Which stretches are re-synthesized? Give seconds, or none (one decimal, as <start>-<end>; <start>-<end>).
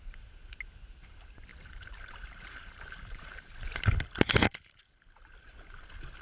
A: 1.5-3.5